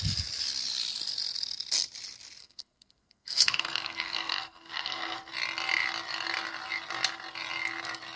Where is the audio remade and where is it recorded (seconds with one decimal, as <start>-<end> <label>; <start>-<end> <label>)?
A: 0.0-2.4 recorded; 2.4-5.3 remade; 5.3-8.2 recorded